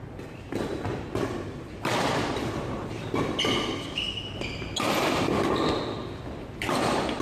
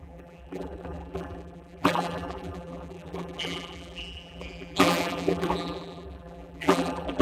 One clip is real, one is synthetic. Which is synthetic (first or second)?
second